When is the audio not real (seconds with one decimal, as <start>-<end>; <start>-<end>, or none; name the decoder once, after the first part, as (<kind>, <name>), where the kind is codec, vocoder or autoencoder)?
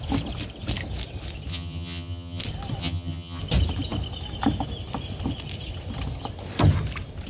1.5-2.4 (vocoder, HiFi-GAN); 2.8-3.4